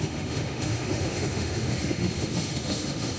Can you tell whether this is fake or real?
fake